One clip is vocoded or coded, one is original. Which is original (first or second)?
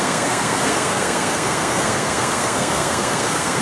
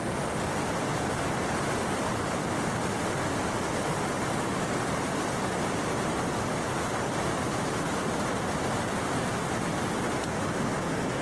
second